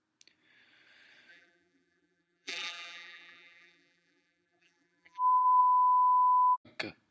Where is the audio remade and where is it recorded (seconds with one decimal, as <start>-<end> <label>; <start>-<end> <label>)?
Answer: 0.0-1.3 recorded; 1.3-5.6 remade; 5.6-7.1 recorded